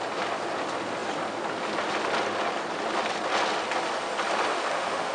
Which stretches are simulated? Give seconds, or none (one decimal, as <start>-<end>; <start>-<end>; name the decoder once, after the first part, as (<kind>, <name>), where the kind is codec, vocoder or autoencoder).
4.5-5.1 (autoencoder, DAC-VAE)